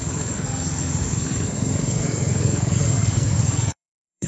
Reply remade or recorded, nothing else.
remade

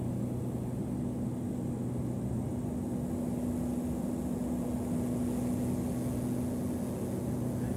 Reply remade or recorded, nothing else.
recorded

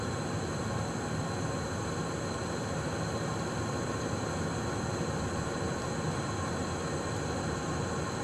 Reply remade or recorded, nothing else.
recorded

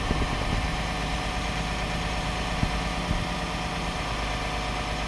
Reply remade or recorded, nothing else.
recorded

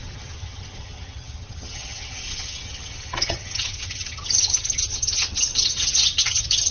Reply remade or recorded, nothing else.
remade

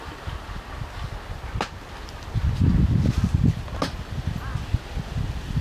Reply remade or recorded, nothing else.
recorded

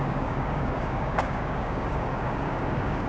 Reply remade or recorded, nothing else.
remade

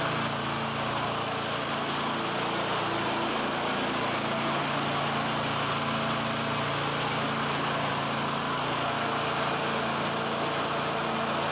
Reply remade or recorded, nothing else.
recorded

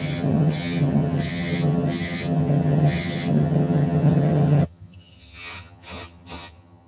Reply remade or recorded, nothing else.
remade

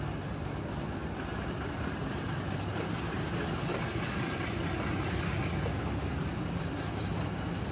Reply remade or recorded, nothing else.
recorded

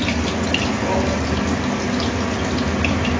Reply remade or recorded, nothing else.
recorded